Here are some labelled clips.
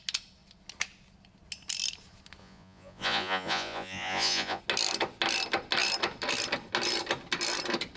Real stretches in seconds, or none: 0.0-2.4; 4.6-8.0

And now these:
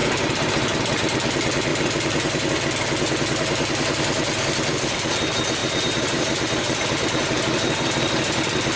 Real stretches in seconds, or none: 0.5-1.7; 2.5-5.6; 8.3-8.8

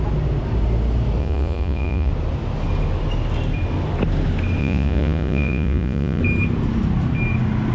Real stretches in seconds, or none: 0.0-1.2; 2.1-4.6; 6.2-7.7

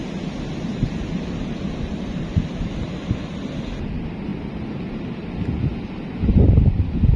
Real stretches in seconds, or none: 0.0-7.2